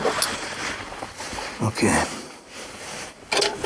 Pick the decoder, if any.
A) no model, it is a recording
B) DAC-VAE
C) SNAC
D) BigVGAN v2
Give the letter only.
A